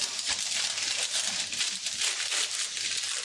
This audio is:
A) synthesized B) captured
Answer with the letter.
B